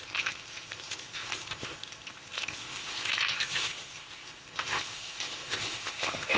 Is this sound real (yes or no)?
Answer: no